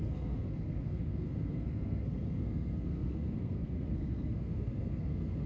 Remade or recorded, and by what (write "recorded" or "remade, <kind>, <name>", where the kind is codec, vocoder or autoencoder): remade, codec, SNAC